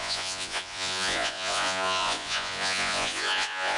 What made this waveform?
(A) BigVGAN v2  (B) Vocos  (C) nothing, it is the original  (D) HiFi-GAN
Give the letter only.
B